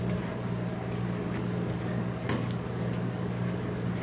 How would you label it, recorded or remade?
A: remade